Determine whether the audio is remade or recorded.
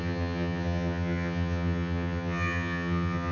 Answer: remade